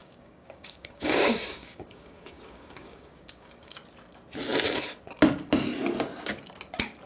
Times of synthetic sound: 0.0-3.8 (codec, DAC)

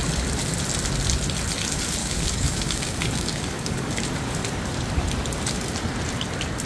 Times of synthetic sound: 2.0-4.1 (codec, DAC)

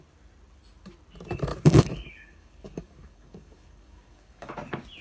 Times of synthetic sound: 1.5-4.5 (codec, DAC)

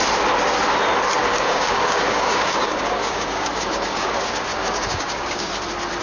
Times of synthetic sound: 1.2-4.1 (codec, DAC); 4.5-5.5

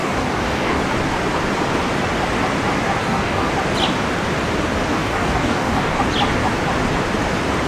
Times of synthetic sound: 0.0-0.8 (codec, DAC); 3.0-3.5; 4.9-6.0